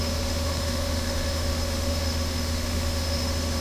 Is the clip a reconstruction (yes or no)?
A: yes